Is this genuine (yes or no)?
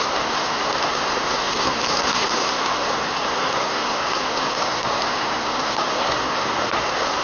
no